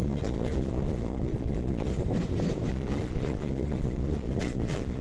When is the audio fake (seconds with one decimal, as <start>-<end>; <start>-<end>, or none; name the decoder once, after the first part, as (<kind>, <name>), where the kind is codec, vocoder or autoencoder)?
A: 0.0-2.0 (vocoder, Vocos); 2.7-5.0